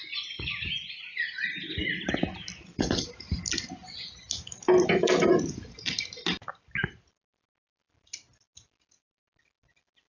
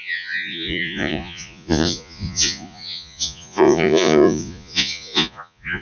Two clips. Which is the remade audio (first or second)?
second